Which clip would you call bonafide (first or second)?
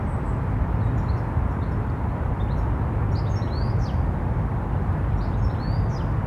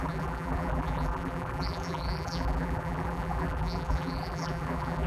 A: first